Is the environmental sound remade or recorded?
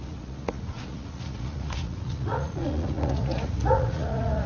remade